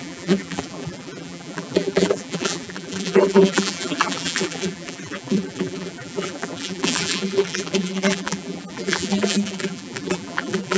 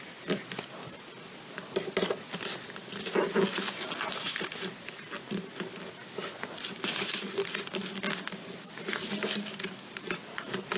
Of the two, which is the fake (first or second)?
first